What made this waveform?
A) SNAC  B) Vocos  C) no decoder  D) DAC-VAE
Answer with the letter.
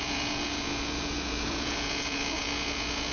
B